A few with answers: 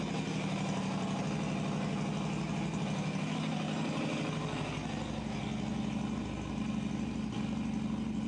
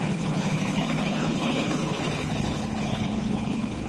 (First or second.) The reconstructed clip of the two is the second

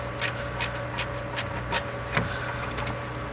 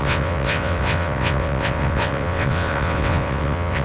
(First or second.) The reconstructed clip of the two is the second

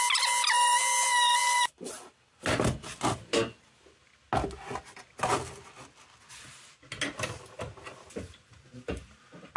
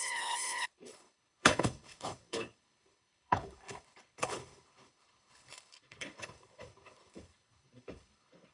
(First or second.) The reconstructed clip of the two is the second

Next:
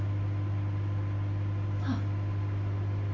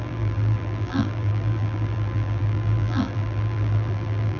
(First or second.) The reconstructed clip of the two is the second